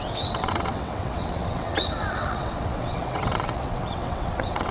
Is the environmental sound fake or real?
fake